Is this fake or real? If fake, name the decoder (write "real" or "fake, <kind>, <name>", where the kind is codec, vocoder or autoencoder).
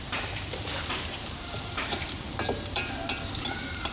fake, vocoder, BigVGAN v2